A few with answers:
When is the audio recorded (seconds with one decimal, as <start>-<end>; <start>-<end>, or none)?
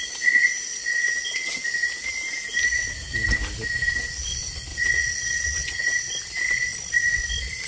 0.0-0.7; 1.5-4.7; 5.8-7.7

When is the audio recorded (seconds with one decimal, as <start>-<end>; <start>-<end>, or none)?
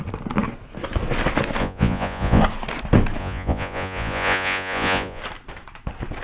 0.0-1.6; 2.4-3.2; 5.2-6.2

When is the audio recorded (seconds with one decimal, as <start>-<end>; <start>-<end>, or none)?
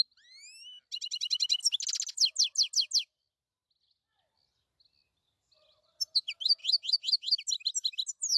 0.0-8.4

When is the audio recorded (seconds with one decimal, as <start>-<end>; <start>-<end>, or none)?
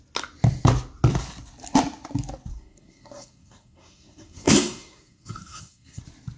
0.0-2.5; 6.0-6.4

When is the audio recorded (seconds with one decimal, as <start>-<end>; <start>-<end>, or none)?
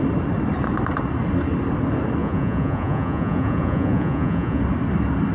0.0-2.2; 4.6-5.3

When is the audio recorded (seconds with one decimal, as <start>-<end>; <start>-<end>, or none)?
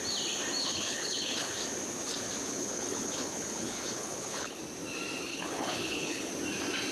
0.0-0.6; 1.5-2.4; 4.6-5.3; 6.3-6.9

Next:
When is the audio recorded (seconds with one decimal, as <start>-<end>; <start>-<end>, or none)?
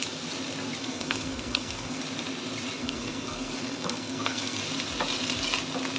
0.0-0.8; 2.0-2.8; 4.6-6.0